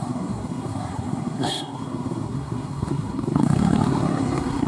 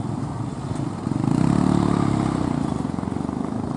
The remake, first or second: first